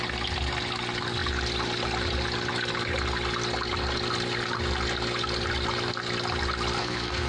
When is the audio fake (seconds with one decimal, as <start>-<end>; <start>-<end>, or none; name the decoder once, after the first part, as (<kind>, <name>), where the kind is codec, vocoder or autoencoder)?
6.8-7.3 (codec, SNAC)